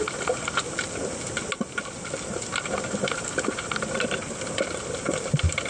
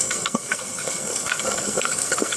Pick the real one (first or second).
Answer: first